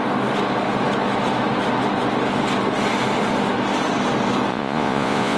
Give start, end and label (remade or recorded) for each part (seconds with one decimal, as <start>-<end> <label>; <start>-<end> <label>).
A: 0.0-4.5 recorded; 4.5-5.4 remade